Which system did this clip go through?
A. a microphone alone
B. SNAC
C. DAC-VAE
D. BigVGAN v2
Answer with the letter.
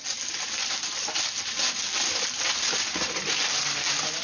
A